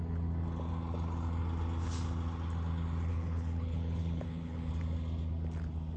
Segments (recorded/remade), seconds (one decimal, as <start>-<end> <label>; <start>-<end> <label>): 0.0-3.1 recorded; 3.1-4.7 remade; 4.7-6.0 recorded